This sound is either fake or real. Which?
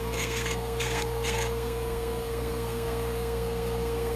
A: fake